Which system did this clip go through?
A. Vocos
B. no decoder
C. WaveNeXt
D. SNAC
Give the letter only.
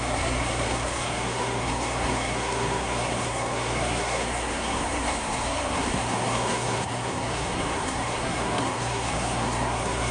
D